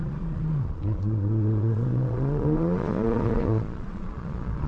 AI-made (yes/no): yes